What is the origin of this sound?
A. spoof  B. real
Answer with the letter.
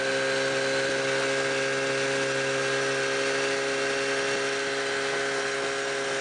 B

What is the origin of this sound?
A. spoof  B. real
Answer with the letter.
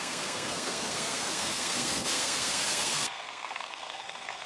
A